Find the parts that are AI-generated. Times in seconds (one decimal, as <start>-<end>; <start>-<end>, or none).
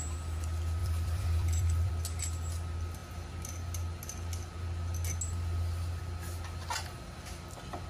0.8-1.9